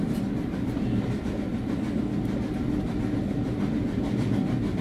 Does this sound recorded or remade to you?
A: recorded